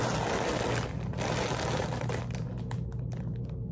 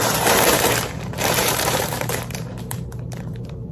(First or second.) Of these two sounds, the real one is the first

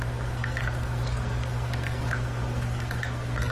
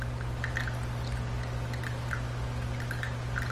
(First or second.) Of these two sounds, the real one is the second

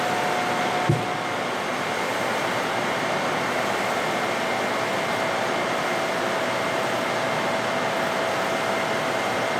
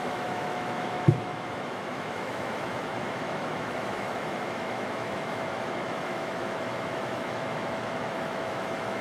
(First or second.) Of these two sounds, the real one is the first